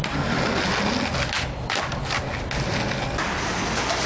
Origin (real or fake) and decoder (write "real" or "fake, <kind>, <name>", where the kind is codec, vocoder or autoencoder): real